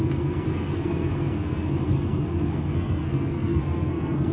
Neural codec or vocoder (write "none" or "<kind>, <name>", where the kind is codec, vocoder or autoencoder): codec, SNAC